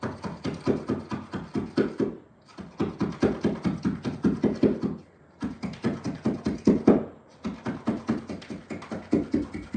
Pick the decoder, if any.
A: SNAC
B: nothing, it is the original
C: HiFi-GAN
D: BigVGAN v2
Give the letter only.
B